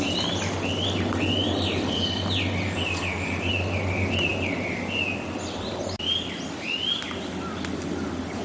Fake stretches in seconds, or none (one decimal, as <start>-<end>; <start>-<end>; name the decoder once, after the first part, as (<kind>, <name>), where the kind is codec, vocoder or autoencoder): none